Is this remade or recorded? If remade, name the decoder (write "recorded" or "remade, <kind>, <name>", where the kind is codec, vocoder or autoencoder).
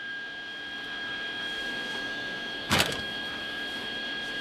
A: remade, autoencoder, DAC-VAE